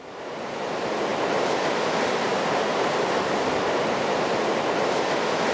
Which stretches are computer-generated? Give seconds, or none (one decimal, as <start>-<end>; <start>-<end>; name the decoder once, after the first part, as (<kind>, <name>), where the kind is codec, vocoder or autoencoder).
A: none